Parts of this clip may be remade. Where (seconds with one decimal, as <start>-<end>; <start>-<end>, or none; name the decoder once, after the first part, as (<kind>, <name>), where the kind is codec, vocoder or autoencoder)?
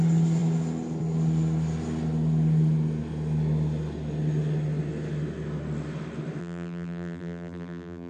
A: 6.4-8.1 (vocoder, BigVGAN v2)